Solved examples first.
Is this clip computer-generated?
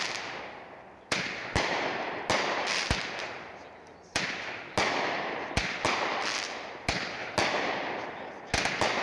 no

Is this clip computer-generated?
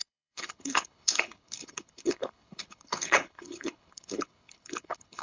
yes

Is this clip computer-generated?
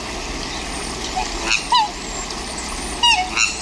no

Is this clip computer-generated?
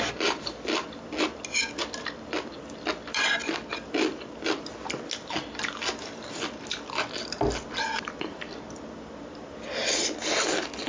no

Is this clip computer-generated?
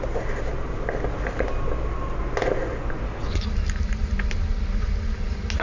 no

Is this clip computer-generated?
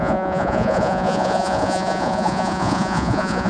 yes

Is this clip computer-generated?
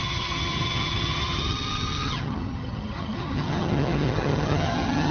yes